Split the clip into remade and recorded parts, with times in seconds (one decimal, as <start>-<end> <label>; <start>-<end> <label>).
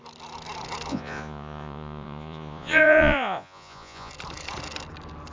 0.0-0.9 recorded; 0.9-4.1 remade; 4.1-5.3 recorded